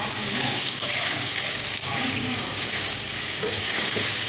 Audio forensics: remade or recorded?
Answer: remade